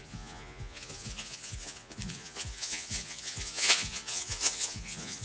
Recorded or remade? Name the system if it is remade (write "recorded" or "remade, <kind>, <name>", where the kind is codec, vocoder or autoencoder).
remade, vocoder, Vocos